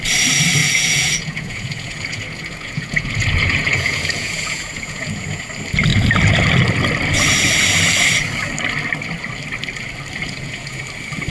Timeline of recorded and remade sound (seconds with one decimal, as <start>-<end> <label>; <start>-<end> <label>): 0.0-0.6 recorded; 0.6-5.4 remade; 5.4-10.2 recorded; 10.2-10.8 remade; 10.8-11.3 recorded